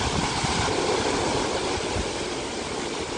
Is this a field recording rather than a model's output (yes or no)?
yes